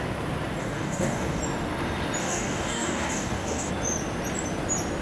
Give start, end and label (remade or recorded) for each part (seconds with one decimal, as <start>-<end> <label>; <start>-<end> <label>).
0.0-0.6 recorded; 0.6-1.4 remade; 1.4-2.2 recorded; 2.2-3.7 remade; 3.7-5.0 recorded